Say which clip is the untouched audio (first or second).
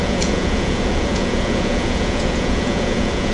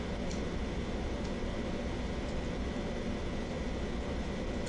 second